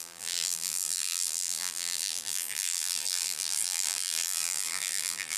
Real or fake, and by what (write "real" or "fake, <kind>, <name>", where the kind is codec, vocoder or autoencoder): fake, vocoder, BigVGAN v2